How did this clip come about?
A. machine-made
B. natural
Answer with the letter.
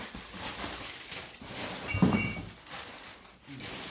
B